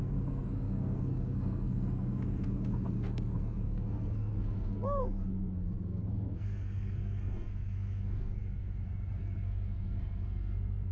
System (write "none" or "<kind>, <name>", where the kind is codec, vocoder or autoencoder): codec, SNAC